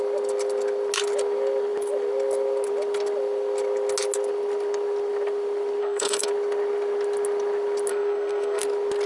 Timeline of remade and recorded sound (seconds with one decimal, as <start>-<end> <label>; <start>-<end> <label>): 0.0-5.8 recorded; 5.8-6.3 remade; 6.3-7.9 recorded; 7.9-8.6 remade; 8.6-9.1 recorded